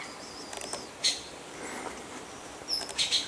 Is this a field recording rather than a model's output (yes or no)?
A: yes